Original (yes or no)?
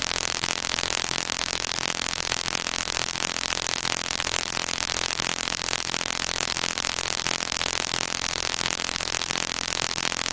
no